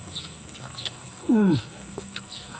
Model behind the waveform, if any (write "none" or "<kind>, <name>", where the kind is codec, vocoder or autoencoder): codec, SNAC